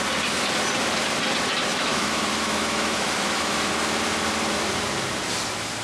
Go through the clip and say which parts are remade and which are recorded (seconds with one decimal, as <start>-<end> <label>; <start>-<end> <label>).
0.0-1.7 recorded; 1.7-3.7 remade; 3.7-5.8 recorded